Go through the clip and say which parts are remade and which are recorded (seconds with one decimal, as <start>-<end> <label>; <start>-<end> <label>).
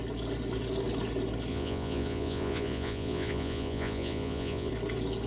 0.0-1.5 recorded; 1.5-4.7 remade; 4.7-5.3 recorded